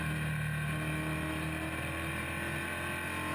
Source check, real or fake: real